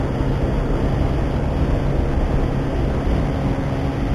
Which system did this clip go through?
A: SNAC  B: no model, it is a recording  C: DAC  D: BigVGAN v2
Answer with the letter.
B